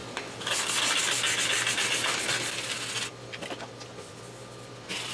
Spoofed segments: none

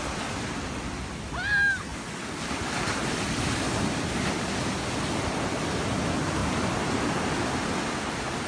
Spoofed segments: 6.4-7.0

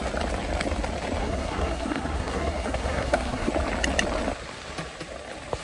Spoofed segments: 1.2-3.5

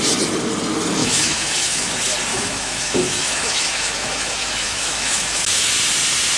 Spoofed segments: 1.0-1.9; 2.3-5.7

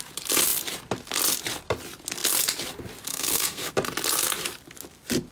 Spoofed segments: 3.1-3.7

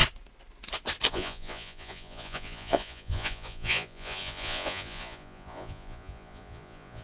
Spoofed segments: 1.1-7.0

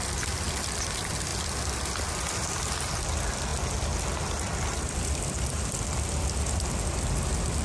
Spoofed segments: none